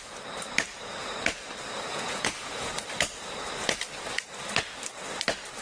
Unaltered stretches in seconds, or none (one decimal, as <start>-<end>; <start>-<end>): 0.0-1.9; 2.7-5.6